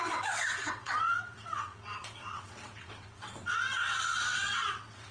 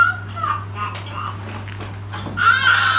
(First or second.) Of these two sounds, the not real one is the first